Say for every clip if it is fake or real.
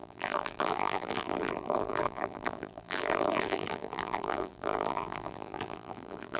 fake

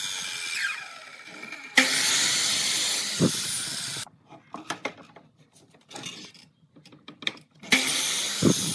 real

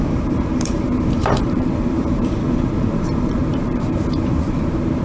fake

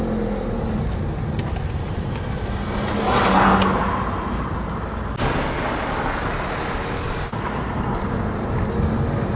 real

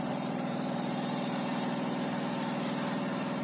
fake